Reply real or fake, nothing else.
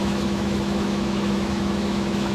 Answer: fake